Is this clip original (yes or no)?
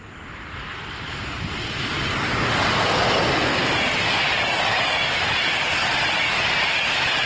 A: yes